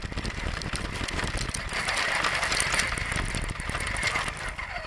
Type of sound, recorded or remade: recorded